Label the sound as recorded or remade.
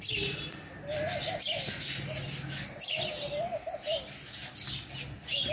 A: recorded